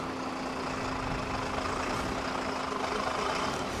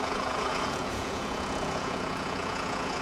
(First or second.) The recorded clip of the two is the first